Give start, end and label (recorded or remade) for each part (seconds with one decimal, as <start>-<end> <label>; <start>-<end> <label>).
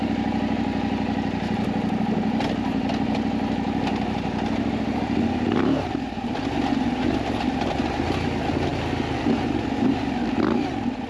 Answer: 0.0-11.1 recorded